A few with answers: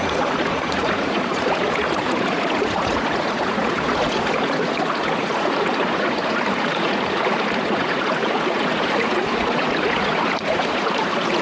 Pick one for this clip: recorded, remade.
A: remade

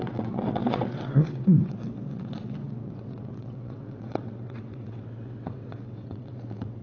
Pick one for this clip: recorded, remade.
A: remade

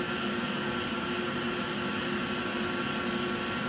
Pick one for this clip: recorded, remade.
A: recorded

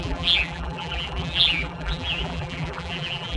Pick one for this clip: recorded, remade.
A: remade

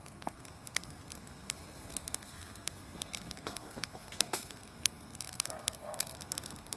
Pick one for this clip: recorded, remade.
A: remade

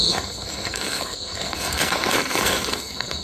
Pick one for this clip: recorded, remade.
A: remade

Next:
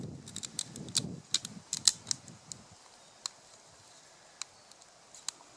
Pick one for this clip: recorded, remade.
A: recorded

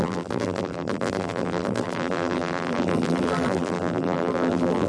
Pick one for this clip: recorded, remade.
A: remade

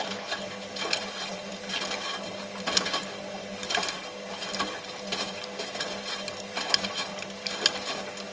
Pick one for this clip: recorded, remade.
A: recorded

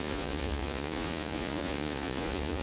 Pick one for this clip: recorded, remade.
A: remade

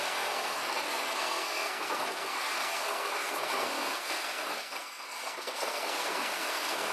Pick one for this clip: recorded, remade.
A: remade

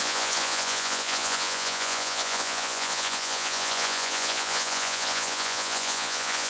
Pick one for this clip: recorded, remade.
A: remade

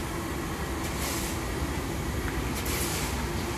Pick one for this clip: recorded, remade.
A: recorded